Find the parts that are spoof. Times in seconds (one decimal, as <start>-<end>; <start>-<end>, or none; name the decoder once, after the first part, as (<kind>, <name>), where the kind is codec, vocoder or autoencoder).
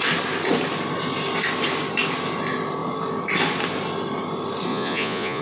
4.7-5.4 (vocoder, Vocos)